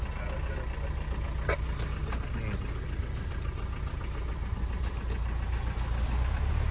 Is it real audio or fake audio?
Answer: real